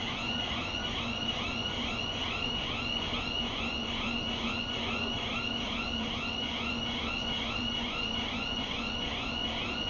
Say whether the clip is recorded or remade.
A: remade